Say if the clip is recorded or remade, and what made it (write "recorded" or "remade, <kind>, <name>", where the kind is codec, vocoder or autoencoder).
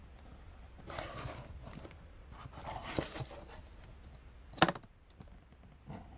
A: recorded